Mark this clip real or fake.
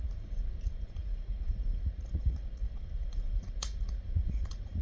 fake